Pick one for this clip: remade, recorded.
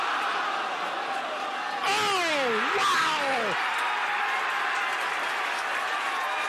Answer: recorded